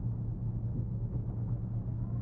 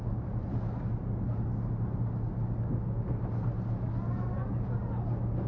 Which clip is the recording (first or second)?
second